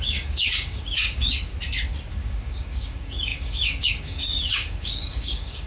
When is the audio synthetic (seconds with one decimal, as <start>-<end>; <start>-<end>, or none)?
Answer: 0.0-1.5; 2.1-5.7